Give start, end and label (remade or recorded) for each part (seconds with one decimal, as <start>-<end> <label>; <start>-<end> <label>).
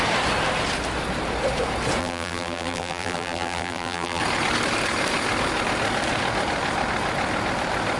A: 0.0-2.0 recorded; 2.0-4.2 remade; 4.2-8.0 recorded